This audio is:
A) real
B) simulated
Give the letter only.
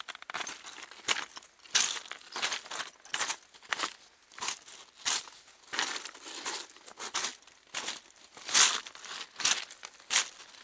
A